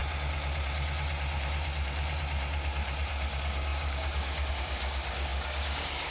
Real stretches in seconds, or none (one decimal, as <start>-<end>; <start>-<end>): 0.0-3.1